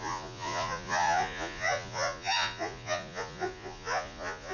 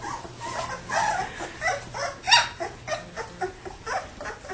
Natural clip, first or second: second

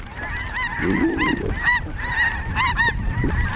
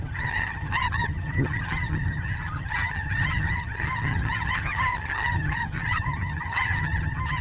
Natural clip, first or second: first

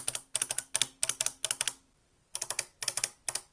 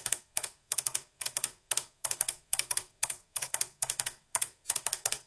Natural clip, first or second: first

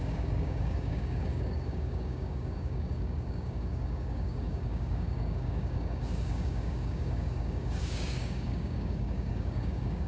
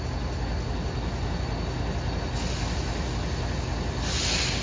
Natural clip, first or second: second